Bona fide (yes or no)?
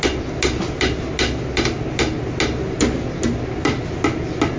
yes